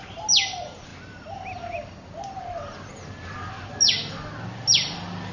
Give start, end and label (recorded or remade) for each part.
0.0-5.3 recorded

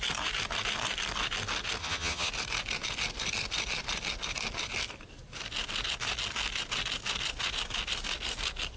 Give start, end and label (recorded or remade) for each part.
0.0-1.8 recorded; 1.8-2.3 remade; 2.3-8.8 recorded

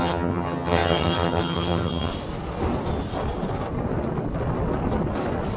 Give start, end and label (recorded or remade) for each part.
0.0-2.1 remade; 2.1-5.6 recorded

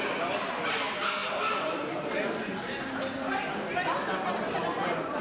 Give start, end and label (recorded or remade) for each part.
0.0-5.2 recorded